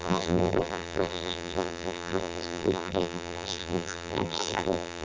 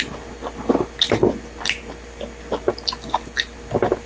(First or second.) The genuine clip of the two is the second